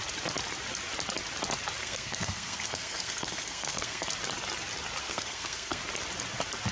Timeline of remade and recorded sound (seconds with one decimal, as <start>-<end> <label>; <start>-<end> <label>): 0.0-1.8 recorded; 1.8-4.1 remade; 4.1-5.0 recorded; 5.0-5.8 remade; 5.8-6.7 recorded